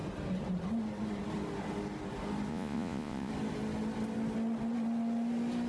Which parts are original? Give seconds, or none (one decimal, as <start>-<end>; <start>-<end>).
0.0-2.5; 3.3-5.7